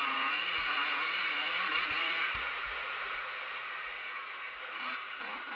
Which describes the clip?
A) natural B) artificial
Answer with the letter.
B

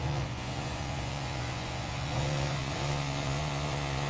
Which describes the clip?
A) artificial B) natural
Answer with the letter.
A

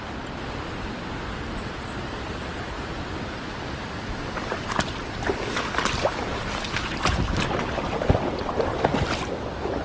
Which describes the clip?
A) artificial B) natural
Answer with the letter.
B